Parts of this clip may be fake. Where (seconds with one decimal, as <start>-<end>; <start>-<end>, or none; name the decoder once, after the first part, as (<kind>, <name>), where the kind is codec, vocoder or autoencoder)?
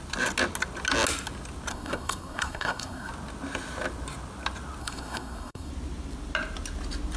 1.7-3.1 (codec, SNAC); 4.8-5.7